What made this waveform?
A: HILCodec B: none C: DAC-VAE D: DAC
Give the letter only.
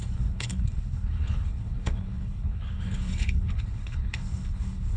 A